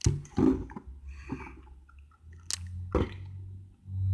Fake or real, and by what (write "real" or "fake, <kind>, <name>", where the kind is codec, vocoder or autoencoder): real